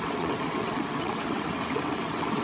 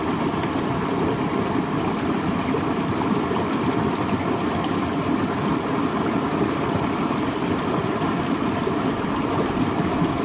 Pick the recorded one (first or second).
second